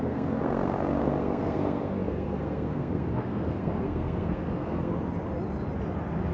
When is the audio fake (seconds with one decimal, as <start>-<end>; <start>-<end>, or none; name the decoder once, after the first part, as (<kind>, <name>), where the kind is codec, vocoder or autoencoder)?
0.0-4.9 (codec, SNAC)